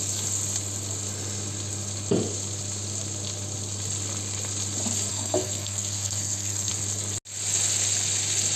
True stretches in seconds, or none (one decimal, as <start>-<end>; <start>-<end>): 0.0-5.1; 6.7-8.6